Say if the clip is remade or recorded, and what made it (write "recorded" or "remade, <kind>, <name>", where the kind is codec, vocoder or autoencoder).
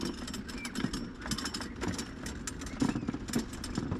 recorded